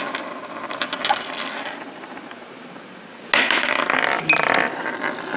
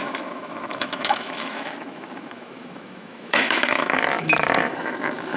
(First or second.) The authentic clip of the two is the first